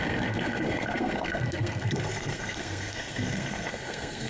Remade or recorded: remade